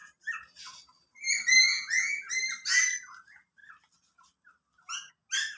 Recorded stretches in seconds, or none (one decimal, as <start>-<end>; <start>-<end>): 0.0-1.7; 2.3-5.6